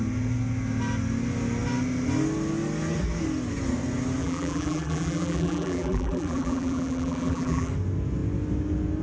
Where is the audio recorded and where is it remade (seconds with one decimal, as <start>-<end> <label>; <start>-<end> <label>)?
0.0-4.2 recorded; 4.2-7.7 remade; 7.7-9.0 recorded